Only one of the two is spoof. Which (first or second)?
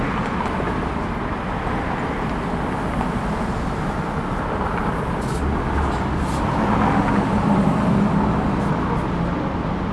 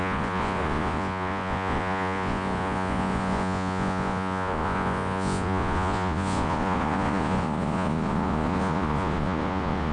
second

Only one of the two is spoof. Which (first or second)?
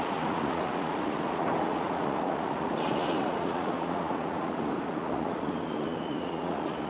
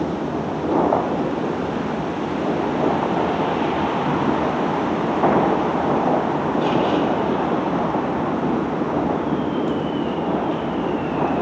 first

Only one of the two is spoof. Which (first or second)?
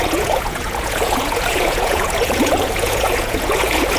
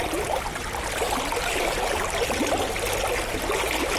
first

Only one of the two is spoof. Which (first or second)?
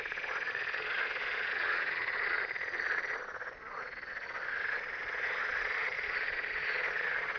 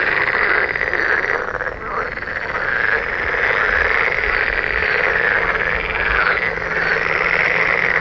first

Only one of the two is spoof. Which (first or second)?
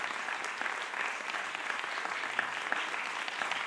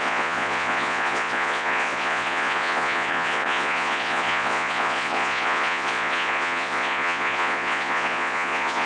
second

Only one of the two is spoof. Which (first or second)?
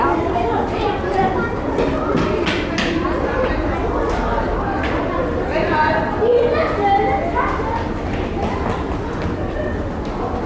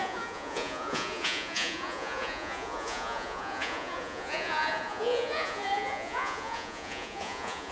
second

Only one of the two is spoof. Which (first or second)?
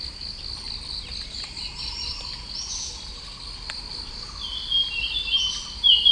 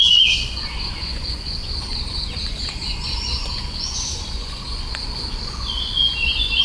second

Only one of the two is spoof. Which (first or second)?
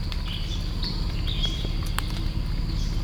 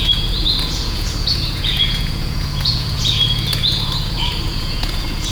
second